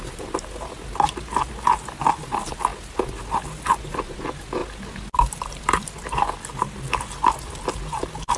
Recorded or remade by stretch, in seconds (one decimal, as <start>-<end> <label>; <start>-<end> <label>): 0.0-8.4 recorded